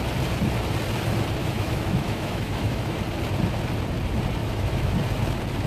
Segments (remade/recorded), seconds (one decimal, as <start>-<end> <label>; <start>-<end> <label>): 0.0-1.4 recorded; 1.4-3.0 remade; 3.0-4.4 recorded; 4.4-5.0 remade; 5.0-5.7 recorded